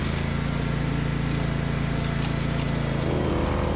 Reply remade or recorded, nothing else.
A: recorded